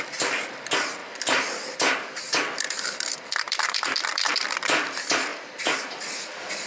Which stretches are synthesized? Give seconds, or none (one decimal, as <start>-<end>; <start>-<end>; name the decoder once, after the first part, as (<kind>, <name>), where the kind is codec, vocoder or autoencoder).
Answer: 0.0-6.7 (vocoder, BigVGAN v2)